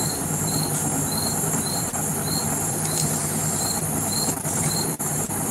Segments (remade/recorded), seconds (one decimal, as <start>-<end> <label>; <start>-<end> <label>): 0.0-0.5 remade; 0.5-1.4 recorded; 1.4-2.0 remade; 2.0-4.3 recorded; 4.3-5.5 remade